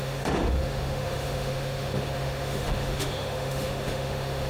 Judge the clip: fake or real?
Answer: fake